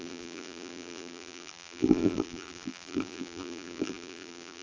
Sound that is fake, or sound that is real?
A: fake